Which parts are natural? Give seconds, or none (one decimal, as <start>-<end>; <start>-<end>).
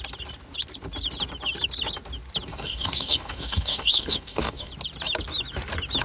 0.0-2.5; 4.7-6.0